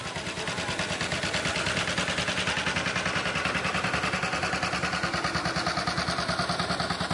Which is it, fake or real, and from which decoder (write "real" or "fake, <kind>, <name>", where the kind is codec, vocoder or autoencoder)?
real